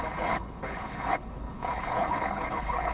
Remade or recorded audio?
remade